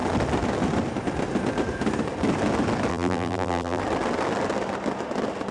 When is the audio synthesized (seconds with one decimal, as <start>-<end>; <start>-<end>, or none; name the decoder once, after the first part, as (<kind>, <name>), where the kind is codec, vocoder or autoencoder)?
2.9-3.8 (vocoder, BigVGAN v2)